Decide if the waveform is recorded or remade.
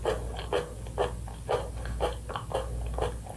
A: recorded